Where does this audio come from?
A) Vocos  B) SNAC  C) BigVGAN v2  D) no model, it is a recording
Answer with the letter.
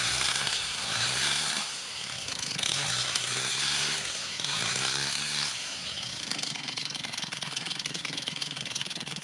B